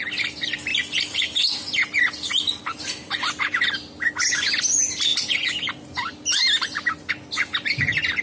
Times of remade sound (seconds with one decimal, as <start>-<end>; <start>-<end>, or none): none